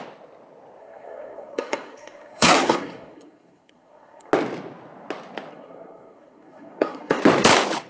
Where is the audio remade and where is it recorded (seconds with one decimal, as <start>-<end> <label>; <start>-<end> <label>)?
0.0-0.8 recorded; 0.8-4.3 remade; 4.3-5.5 recorded; 5.5-7.2 remade; 7.2-7.9 recorded